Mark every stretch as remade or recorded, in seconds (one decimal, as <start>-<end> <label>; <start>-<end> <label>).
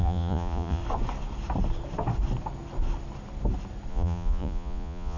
0.0-0.8 remade; 0.8-3.9 recorded; 3.9-5.2 remade